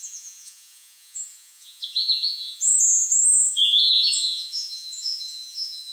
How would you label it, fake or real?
fake